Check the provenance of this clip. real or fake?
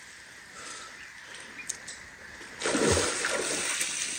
real